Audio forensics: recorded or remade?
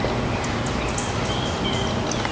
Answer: recorded